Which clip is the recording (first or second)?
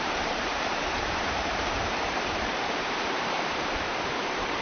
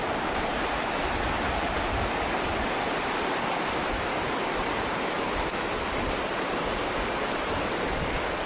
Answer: second